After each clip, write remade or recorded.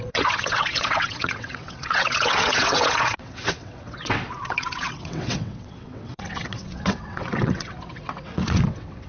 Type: remade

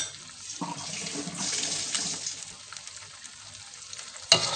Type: recorded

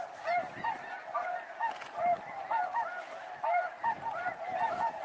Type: recorded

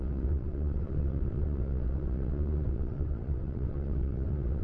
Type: remade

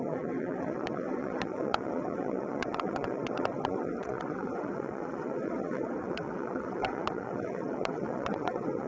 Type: remade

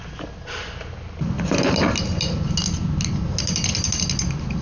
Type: recorded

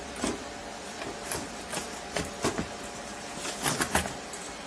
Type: recorded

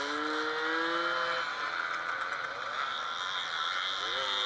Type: recorded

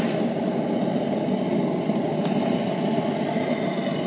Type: recorded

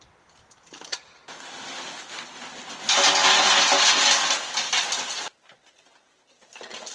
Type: recorded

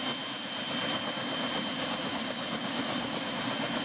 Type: recorded